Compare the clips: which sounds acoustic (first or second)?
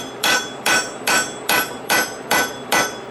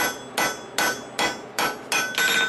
second